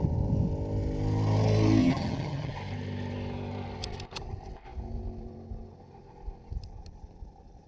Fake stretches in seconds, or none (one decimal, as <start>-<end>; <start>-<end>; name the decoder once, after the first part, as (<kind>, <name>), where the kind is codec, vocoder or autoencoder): 1.8-2.5 (vocoder, HiFi-GAN)